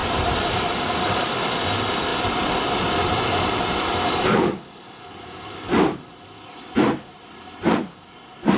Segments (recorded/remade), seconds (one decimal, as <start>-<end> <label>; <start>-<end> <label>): 0.0-1.6 remade; 1.6-2.1 recorded; 2.1-7.3 remade; 7.3-8.6 recorded